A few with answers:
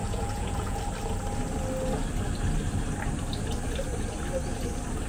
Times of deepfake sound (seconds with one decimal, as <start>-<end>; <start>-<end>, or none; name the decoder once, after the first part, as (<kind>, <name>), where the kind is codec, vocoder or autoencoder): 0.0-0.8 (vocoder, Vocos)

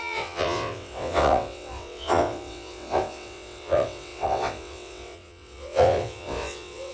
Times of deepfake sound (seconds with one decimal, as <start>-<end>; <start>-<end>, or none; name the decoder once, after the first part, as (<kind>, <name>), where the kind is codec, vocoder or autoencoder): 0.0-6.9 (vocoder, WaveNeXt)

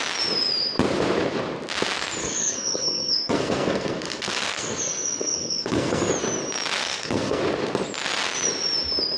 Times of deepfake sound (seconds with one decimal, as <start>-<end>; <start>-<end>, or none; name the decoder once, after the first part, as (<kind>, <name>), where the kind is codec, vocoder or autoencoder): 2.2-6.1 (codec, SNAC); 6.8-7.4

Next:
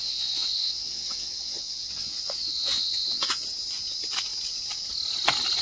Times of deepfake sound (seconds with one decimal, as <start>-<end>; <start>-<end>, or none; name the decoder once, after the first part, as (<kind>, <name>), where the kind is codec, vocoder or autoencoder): 0.0-3.4 (vocoder, WaveNeXt)